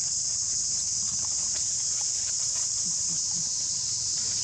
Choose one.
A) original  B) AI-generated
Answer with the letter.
B